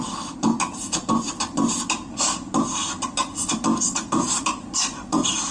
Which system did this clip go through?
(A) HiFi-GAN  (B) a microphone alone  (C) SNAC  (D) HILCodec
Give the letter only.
B